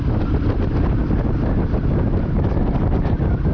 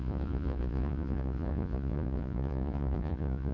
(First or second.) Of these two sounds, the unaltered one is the first